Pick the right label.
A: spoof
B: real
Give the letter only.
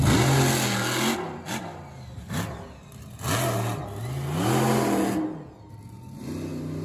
B